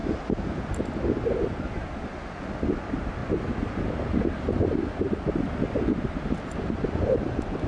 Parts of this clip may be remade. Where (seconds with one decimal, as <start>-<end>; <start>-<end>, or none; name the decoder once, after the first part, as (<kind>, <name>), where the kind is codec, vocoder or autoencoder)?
none

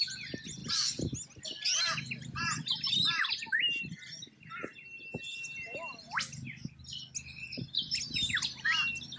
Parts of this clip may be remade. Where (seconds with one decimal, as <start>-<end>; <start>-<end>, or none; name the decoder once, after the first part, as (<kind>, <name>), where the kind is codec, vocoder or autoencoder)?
none

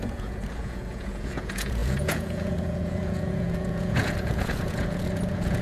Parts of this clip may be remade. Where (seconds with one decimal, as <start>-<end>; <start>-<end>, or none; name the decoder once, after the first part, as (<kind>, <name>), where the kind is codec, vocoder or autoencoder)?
0.0-5.6 (vocoder, Vocos)

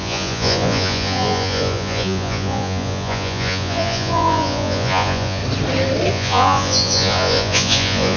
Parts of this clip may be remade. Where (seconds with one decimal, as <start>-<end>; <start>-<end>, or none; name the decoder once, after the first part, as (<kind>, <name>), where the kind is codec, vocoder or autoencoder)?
0.0-5.4 (vocoder, Vocos); 6.1-8.2